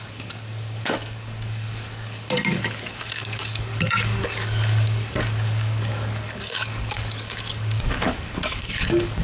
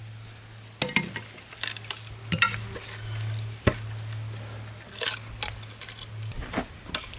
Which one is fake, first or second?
first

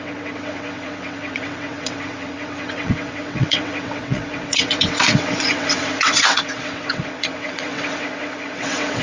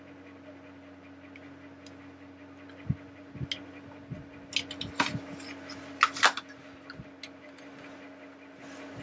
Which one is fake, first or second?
first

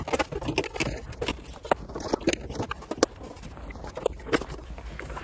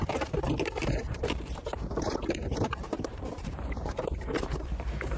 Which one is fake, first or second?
second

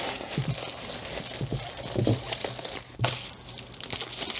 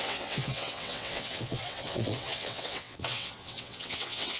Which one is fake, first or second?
second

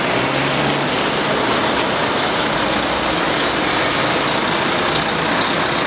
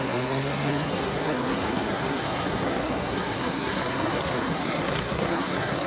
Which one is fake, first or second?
second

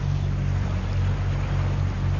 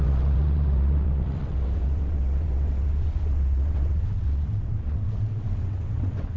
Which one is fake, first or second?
second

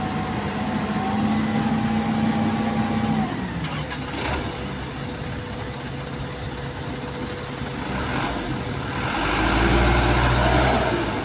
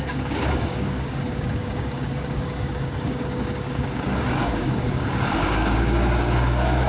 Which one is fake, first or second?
second